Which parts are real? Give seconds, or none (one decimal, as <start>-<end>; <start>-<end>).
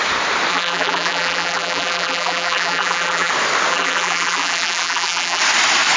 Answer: 0.0-0.5; 3.3-3.7; 5.4-6.0